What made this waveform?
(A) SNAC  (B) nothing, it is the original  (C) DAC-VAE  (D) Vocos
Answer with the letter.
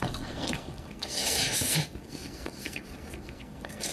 A